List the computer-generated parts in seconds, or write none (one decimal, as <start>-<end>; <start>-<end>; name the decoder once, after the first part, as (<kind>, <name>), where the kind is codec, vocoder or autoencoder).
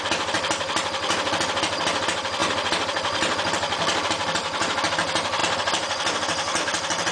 none